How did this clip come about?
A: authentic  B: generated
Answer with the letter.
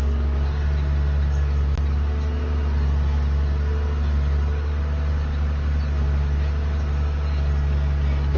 A